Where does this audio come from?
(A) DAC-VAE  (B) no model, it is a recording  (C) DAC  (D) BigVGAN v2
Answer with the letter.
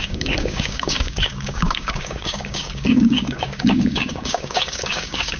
C